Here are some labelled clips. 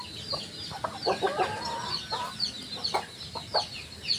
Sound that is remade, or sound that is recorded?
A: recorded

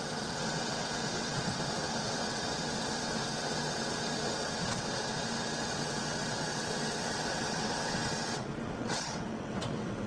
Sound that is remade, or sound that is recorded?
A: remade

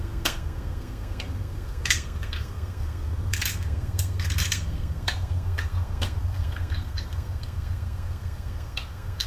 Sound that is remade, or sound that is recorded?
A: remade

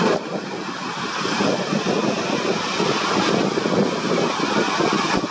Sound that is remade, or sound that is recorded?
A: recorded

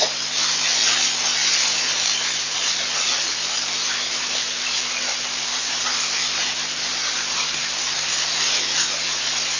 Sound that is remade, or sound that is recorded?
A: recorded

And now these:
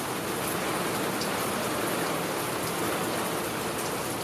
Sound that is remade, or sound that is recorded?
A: recorded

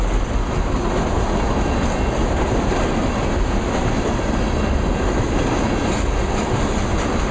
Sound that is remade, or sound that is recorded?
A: recorded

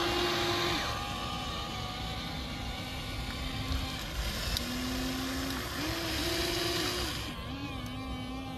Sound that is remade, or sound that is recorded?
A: recorded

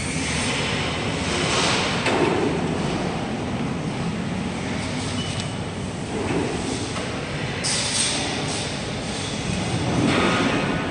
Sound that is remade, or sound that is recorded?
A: remade